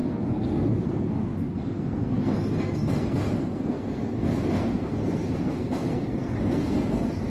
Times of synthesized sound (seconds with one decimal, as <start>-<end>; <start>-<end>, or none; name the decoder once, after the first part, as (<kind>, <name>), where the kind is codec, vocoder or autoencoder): 0.0-7.3 (codec, SNAC)